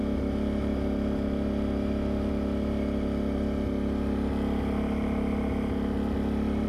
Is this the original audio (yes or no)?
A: yes